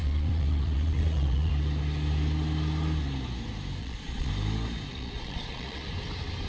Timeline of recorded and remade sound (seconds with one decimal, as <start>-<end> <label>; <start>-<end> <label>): 0.0-1.5 remade; 1.5-3.8 recorded; 3.8-4.3 remade; 4.3-4.9 recorded; 4.9-5.9 remade; 5.9-6.5 recorded